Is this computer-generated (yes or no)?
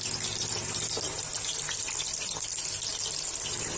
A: no